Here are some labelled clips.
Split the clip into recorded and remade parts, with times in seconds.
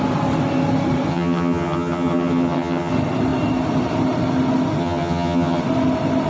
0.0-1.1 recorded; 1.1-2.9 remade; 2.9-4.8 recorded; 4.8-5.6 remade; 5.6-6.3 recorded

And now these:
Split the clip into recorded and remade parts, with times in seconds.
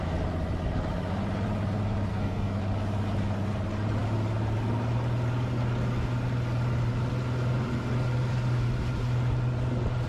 0.0-2.1 recorded; 2.1-2.6 remade; 2.6-10.1 recorded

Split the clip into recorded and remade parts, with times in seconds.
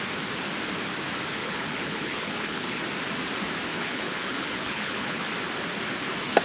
0.0-1.4 recorded; 1.4-2.8 remade; 2.8-3.7 recorded; 3.7-5.2 remade; 5.2-6.4 recorded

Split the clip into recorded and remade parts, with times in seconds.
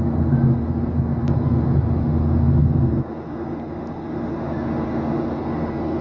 0.0-2.6 recorded; 2.6-3.1 remade; 3.1-6.0 recorded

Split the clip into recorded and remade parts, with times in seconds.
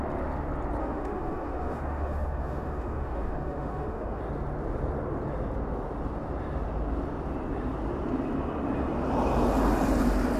0.0-0.8 recorded; 0.8-4.2 remade; 4.2-10.4 recorded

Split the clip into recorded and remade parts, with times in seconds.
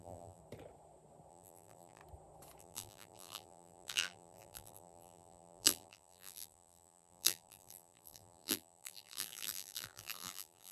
0.0-0.4 remade; 0.4-1.3 recorded; 1.3-2.0 remade; 2.0-2.6 recorded; 2.6-10.7 remade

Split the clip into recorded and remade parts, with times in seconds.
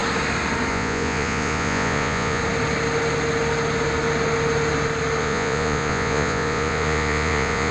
0.0-0.7 recorded; 0.7-2.4 remade; 2.4-5.2 recorded; 5.2-7.7 remade